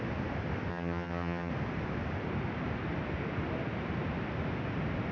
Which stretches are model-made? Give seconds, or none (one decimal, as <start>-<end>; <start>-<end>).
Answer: 0.7-1.5